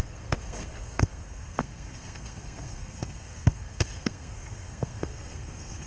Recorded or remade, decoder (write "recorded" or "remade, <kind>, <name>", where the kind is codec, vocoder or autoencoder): remade, codec, SNAC